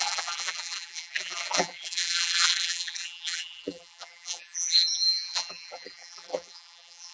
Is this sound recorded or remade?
remade